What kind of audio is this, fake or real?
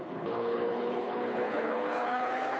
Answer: fake